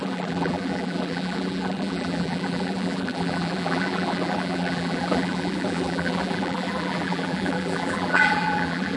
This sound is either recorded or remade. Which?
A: remade